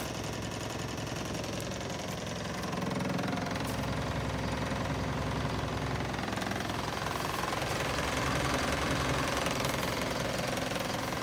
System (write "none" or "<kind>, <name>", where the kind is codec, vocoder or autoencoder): vocoder, BigVGAN v2